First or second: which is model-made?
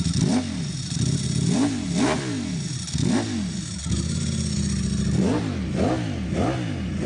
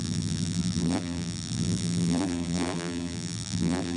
second